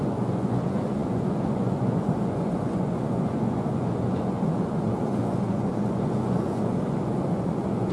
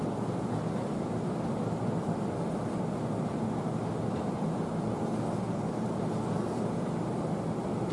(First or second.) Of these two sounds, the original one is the second